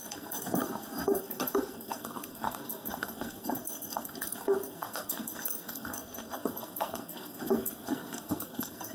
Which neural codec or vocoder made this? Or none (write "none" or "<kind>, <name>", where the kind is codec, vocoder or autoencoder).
codec, SNAC